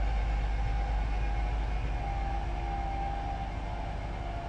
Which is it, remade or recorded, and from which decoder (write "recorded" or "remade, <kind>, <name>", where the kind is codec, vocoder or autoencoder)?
recorded